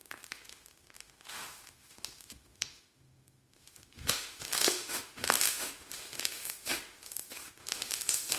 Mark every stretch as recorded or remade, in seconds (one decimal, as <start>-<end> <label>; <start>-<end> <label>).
0.0-8.4 remade